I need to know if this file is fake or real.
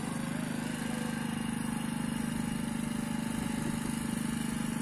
real